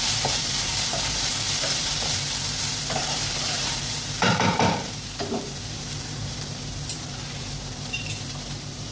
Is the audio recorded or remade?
remade